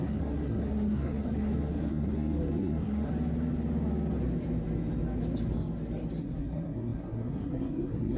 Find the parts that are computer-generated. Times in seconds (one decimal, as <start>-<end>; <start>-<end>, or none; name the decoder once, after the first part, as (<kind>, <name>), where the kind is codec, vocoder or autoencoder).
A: 0.0-3.1 (codec, SNAC); 6.2-8.2